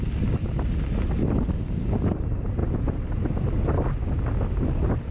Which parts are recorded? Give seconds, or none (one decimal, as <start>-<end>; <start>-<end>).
0.0-5.1